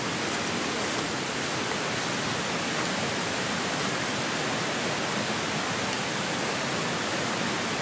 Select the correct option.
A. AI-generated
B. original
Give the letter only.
B